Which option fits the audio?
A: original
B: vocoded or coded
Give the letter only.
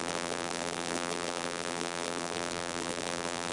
B